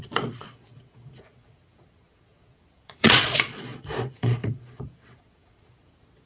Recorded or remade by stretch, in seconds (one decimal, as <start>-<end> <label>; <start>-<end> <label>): 0.0-6.3 remade